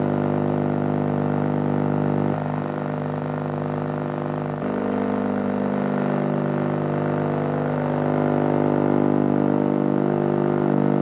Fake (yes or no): no